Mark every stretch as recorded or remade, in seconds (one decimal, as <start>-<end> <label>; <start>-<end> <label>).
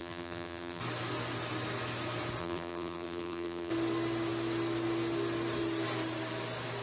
0.0-0.8 remade; 0.8-2.4 recorded; 2.4-3.7 remade; 3.7-6.8 recorded